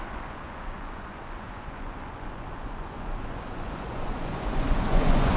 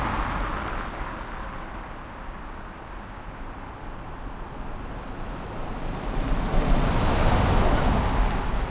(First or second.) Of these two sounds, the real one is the second